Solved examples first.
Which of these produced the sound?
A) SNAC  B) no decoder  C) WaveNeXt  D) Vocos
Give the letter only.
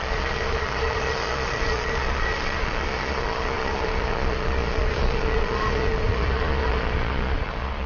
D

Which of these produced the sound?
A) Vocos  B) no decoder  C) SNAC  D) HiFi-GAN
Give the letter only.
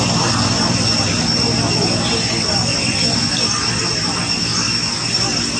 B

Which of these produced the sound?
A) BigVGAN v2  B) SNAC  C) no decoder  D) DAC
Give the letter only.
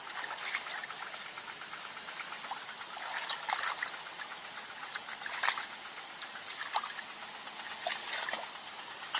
C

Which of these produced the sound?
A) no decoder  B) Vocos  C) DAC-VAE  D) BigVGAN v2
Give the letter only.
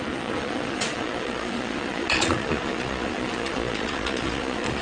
B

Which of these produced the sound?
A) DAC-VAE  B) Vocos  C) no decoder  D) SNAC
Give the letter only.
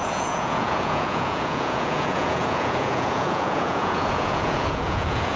B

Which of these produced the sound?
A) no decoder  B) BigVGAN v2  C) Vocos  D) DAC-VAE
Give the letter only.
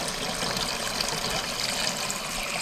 A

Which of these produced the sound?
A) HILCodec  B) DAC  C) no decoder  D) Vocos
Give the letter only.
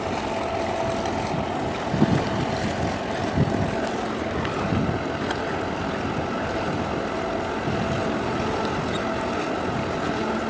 C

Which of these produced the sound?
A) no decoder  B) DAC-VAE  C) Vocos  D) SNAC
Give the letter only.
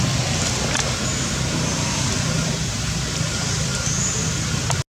A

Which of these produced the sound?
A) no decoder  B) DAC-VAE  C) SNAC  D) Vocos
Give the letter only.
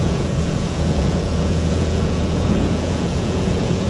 D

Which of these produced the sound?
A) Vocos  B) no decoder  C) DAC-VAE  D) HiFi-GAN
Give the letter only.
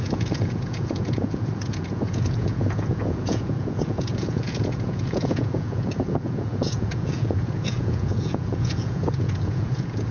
A